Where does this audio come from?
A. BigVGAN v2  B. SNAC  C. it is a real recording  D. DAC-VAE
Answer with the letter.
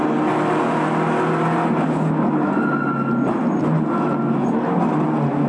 C